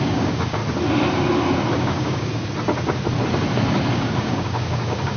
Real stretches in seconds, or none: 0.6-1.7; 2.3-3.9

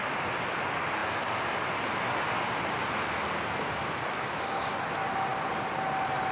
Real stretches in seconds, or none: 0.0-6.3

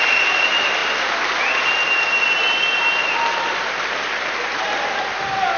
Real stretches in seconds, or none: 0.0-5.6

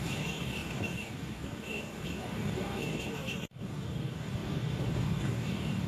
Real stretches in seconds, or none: none